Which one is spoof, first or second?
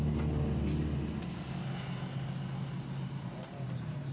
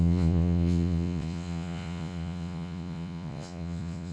second